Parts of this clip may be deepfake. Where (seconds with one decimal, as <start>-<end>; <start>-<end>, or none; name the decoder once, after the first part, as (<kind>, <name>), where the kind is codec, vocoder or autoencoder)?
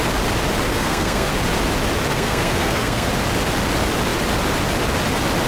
0.7-1.3 (codec, SNAC); 2.1-3.1